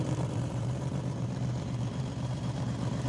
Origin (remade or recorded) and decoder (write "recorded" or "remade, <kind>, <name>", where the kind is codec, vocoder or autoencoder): remade, vocoder, BigVGAN v2